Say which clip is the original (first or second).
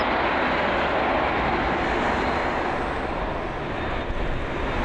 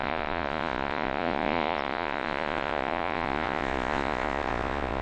first